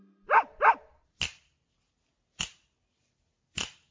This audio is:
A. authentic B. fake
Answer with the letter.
A